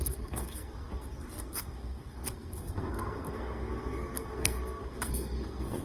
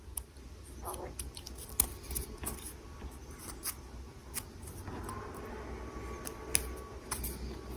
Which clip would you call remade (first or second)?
first